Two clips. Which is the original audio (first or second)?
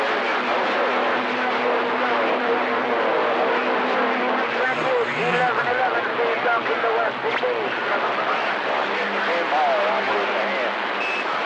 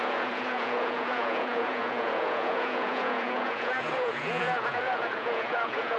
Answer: first